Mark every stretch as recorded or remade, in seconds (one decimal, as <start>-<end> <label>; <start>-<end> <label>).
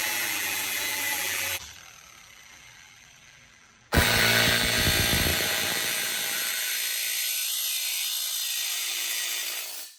0.0-4.8 remade; 4.8-5.3 recorded; 5.3-6.7 remade; 6.7-8.7 recorded; 8.7-9.4 remade; 9.4-10.0 recorded